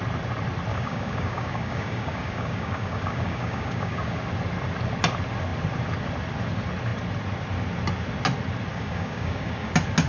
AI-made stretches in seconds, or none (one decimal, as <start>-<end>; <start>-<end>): 0.7-4.2; 8.7-9.7